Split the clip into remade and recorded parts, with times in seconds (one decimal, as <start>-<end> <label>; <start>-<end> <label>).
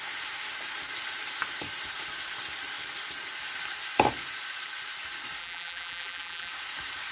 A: 0.0-5.4 recorded; 5.4-6.5 remade; 6.5-7.1 recorded